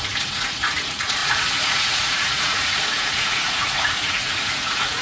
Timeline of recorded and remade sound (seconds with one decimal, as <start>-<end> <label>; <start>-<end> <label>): 0.0-5.0 remade